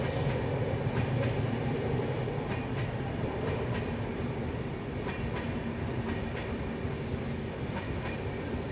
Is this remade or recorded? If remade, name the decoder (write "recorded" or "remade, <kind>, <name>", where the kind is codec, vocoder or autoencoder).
recorded